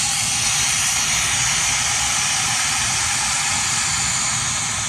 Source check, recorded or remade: recorded